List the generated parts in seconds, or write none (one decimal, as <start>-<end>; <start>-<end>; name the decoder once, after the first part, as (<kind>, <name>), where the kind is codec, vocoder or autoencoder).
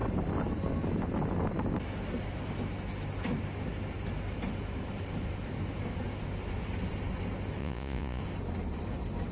7.6-8.2 (vocoder, Vocos)